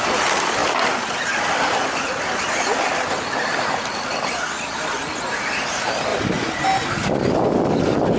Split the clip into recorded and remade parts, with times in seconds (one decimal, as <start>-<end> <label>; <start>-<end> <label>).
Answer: 0.0-8.2 recorded